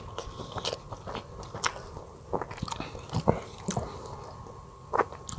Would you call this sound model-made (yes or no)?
no